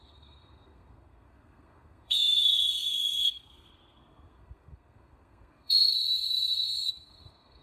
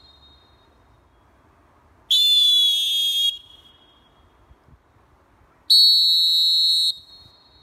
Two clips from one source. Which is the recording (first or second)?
second